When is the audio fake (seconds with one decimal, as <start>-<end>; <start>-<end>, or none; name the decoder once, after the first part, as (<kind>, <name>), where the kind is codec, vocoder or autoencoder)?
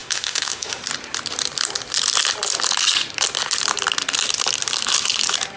0.0-0.8 (autoencoder, DAC-VAE)